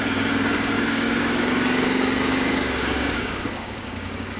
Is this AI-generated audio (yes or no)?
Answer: yes